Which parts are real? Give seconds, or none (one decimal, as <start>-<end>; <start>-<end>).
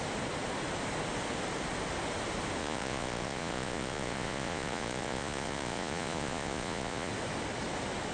0.0-2.6; 7.1-8.1